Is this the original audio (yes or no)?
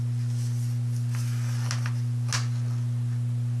yes